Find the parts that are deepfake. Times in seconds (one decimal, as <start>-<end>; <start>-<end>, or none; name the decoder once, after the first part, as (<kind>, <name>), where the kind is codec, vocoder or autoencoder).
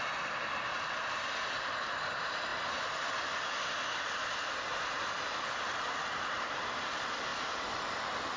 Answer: 0.0-2.5 (vocoder, BigVGAN v2); 5.8-8.4